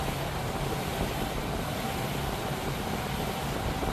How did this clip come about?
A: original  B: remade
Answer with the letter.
A